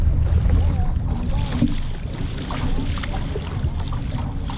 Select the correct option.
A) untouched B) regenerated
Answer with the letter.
A